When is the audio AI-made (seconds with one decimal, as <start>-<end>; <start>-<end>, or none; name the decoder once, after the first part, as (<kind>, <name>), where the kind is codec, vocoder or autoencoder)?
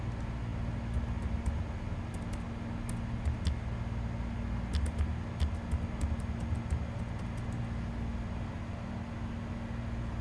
none